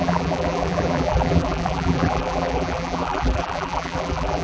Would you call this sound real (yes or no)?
no